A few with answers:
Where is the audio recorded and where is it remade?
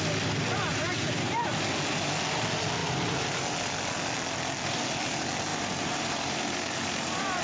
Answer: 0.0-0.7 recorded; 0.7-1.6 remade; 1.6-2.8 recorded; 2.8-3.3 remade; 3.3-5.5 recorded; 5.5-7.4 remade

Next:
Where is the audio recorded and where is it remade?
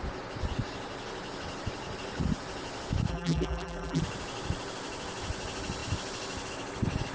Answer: 0.0-3.1 recorded; 3.1-4.0 remade; 4.0-7.1 recorded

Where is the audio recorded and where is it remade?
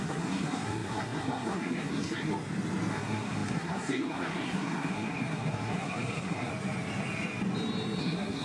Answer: 0.0-2.3 remade; 2.3-2.9 recorded; 2.9-6.5 remade; 6.5-8.0 recorded; 8.0-8.4 remade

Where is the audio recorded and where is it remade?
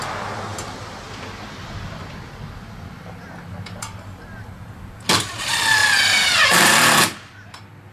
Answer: 0.0-5.8 recorded; 5.8-6.4 remade; 6.4-7.9 recorded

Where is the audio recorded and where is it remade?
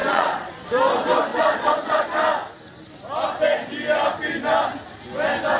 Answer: 0.0-0.5 remade; 0.5-1.3 recorded; 1.3-2.0 remade; 2.0-5.6 recorded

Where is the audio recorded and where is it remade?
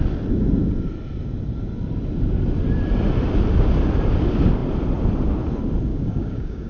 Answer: 0.0-5.9 recorded; 5.9-6.7 remade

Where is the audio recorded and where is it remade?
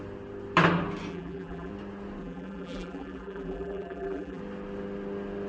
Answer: 0.0-1.1 recorded; 1.1-1.7 remade; 1.7-2.2 recorded; 2.2-4.4 remade; 4.4-5.5 recorded